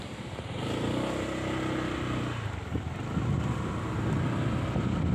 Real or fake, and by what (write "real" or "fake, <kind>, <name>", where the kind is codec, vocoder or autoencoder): real